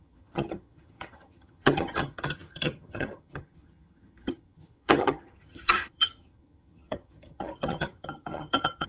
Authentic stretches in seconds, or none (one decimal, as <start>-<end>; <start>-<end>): none